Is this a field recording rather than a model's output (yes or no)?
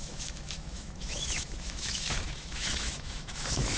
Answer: no